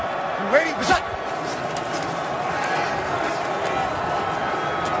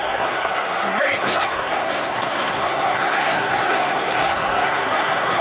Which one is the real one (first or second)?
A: first